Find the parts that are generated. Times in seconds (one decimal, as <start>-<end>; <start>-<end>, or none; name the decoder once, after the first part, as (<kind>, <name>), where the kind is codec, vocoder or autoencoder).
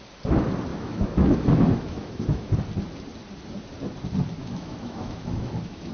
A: 0.7-2.5 (autoencoder, DAC-VAE); 4.4-5.9